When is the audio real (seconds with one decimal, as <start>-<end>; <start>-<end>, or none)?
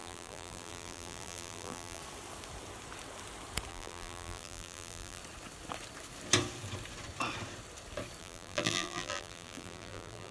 2.0-3.7; 5.2-8.2